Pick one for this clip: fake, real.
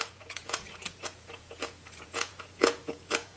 fake